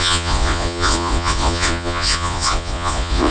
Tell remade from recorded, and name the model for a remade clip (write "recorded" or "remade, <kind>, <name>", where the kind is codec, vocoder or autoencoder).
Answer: remade, vocoder, Vocos